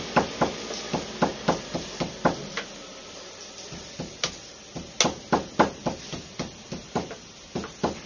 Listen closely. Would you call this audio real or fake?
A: real